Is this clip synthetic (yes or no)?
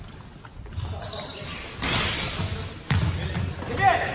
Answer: no